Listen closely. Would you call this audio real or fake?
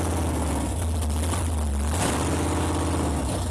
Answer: real